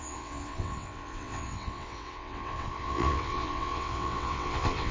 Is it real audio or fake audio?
fake